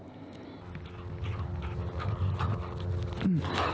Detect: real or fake real